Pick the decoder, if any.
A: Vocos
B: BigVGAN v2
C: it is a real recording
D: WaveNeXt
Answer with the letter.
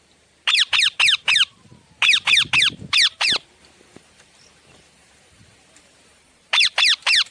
B